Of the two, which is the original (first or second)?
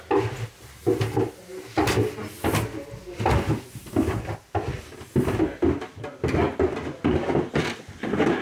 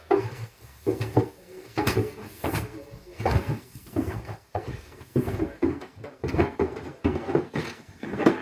first